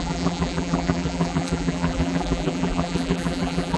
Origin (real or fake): fake